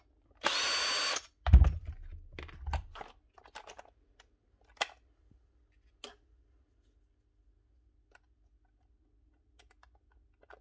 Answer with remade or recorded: recorded